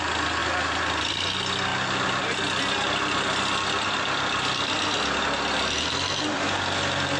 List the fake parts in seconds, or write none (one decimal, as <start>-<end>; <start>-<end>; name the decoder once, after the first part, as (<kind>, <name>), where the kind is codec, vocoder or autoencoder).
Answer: none